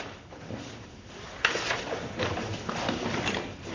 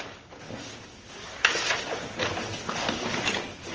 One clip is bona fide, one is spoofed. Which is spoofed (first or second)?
first